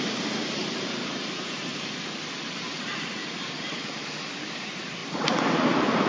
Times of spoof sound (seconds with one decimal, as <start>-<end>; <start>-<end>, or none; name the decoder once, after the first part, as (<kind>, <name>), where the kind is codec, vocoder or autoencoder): 0.0-1.7 (vocoder, BigVGAN v2); 2.8-3.2; 4.4-6.1

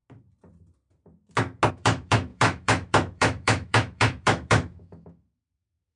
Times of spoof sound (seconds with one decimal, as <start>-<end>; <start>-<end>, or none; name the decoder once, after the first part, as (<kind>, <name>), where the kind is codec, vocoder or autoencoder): 1.7-6.0 (autoencoder, DAC-VAE)

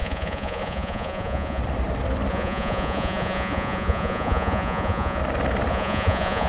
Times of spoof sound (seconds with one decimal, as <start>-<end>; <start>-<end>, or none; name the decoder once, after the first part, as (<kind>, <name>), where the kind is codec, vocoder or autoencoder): 0.0-1.6 (vocoder, Vocos); 2.3-5.2; 5.7-6.5

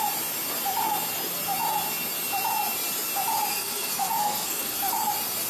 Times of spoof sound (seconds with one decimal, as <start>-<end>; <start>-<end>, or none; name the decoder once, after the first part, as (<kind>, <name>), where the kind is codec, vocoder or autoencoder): 3.5-4.9 (codec, SNAC)

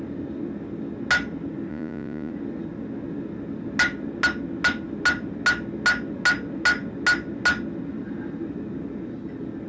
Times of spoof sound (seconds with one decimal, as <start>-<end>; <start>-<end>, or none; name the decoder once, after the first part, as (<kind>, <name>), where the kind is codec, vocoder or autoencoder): 1.7-2.3 (vocoder, Vocos)